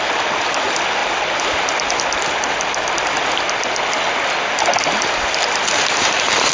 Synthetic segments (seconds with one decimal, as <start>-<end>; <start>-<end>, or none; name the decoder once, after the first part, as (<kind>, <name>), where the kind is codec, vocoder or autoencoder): none